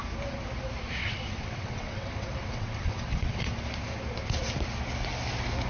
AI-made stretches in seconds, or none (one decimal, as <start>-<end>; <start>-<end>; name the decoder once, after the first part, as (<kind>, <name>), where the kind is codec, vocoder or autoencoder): 1.0-3.4 (vocoder, WaveNeXt)